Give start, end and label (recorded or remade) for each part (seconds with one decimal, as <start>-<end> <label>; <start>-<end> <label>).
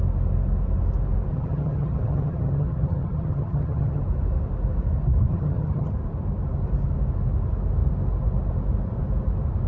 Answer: 0.0-1.3 recorded; 1.3-4.0 remade; 4.0-5.3 recorded; 5.3-5.9 remade; 5.9-9.7 recorded